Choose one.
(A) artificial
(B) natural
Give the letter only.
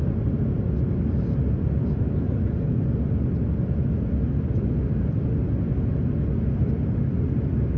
B